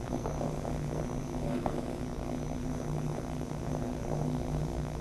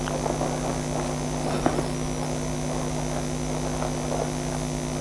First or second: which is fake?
first